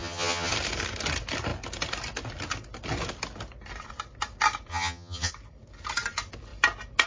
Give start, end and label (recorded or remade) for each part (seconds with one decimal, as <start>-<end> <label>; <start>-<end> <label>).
0.0-0.5 remade; 0.5-4.7 recorded; 4.7-5.3 remade; 5.3-7.1 recorded